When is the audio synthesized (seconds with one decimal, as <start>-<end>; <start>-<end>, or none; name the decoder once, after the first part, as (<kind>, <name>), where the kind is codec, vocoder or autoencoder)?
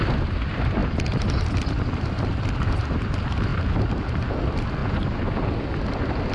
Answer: none